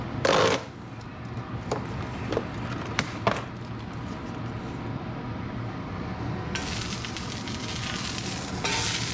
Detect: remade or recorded recorded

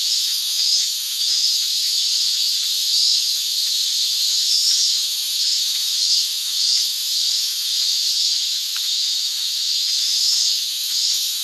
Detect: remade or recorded remade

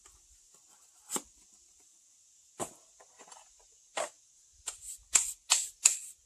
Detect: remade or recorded recorded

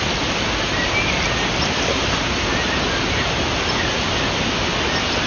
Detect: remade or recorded recorded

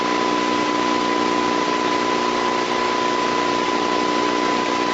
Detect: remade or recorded recorded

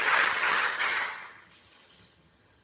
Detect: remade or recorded remade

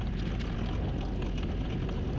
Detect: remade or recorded recorded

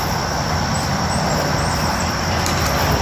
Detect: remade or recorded recorded